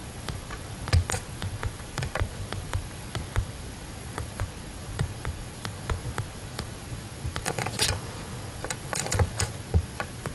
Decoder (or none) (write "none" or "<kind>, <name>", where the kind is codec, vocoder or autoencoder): vocoder, Vocos